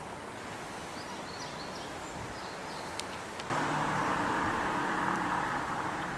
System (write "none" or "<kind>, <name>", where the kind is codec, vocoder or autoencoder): none